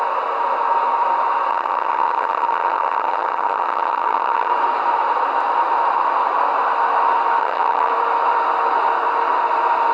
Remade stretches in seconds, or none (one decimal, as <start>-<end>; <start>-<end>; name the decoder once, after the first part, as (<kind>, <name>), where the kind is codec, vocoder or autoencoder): 1.5-4.5 (vocoder, HiFi-GAN); 7.4-7.9